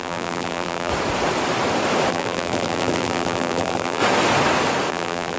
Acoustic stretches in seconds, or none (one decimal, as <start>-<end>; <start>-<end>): 0.9-2.1; 4.0-4.9